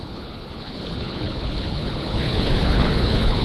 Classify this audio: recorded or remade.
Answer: remade